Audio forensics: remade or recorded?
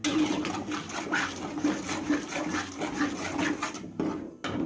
recorded